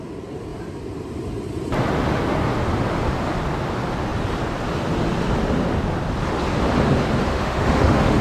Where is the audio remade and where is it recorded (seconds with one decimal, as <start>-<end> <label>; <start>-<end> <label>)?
0.0-7.3 recorded; 7.3-8.2 remade